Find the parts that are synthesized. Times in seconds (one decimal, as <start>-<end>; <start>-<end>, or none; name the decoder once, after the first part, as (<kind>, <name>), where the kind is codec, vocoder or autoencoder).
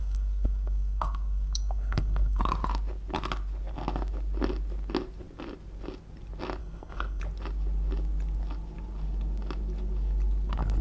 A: 0.0-2.4 (codec, SNAC); 6.6-7.2